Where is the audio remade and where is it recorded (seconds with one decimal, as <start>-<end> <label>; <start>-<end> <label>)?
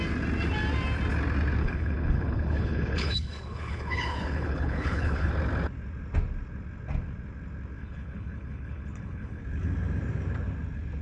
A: 0.0-1.6 recorded; 1.6-5.3 remade; 5.3-7.8 recorded; 7.8-9.4 remade; 9.4-11.0 recorded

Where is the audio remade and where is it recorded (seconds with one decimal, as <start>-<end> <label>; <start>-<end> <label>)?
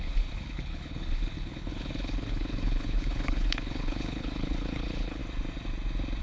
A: 0.0-5.2 remade; 5.2-6.2 recorded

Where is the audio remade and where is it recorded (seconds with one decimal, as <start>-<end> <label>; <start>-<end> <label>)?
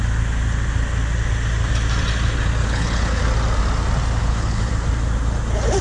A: 0.0-2.6 recorded; 2.6-3.2 remade; 3.2-4.2 recorded; 4.2-4.7 remade; 4.7-5.8 recorded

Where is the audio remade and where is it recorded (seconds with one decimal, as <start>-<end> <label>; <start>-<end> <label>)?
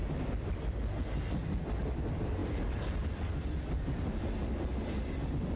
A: 0.0-5.5 recorded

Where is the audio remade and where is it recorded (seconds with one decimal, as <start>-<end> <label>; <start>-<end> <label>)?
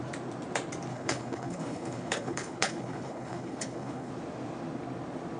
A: 0.0-0.9 recorded; 0.9-4.1 remade; 4.1-5.4 recorded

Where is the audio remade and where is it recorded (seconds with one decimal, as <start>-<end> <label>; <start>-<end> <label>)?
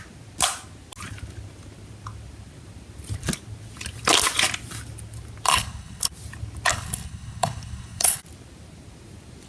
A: 0.0-5.5 recorded; 5.5-6.1 remade; 6.1-6.7 recorded; 6.7-8.2 remade; 8.2-9.5 recorded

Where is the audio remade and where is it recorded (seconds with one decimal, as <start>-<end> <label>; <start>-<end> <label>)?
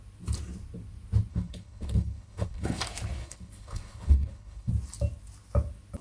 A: 0.0-1.3 recorded; 1.3-2.8 remade; 2.8-3.2 recorded; 3.2-4.7 remade; 4.7-6.0 recorded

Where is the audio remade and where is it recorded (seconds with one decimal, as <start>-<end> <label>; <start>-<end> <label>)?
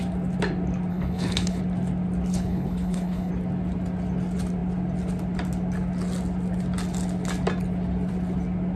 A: 0.0-0.9 recorded; 0.9-1.6 remade; 1.6-2.3 recorded; 2.3-3.3 remade; 3.3-8.8 recorded